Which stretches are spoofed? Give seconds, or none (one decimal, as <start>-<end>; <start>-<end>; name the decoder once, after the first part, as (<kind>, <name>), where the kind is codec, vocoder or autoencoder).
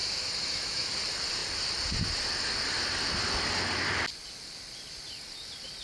0.0-0.9 (autoencoder, DAC-VAE)